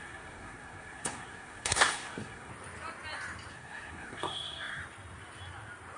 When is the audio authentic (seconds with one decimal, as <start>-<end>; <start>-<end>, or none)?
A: 2.5-3.5; 4.8-6.0